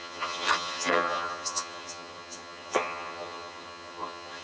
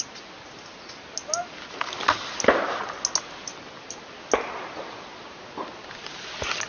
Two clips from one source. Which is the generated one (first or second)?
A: first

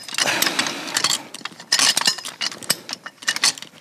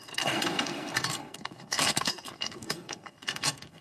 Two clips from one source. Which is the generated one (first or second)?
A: second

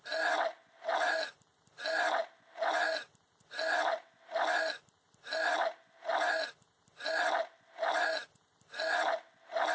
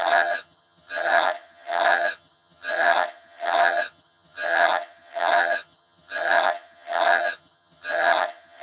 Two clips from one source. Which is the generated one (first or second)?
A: second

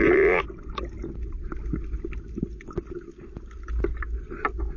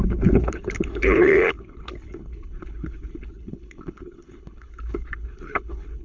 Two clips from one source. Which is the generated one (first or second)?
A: second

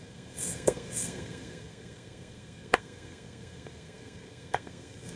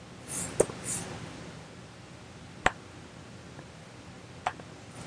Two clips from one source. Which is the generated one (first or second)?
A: first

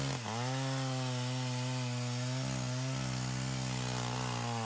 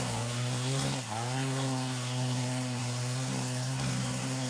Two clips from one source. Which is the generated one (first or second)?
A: second